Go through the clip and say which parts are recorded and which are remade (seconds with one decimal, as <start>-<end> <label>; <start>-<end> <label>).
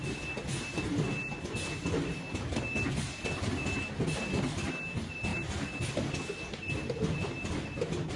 0.0-5.3 recorded; 5.3-5.9 remade; 5.9-8.2 recorded